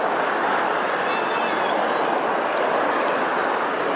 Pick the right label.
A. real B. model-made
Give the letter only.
A